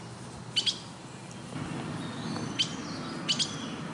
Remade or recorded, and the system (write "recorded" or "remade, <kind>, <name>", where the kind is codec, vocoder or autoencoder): recorded